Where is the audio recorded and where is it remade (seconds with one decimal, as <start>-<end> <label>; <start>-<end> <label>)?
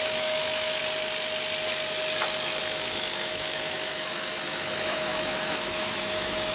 0.0-0.8 remade; 0.8-2.6 recorded; 2.6-6.5 remade